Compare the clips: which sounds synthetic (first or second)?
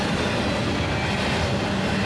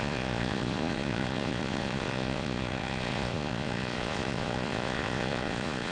second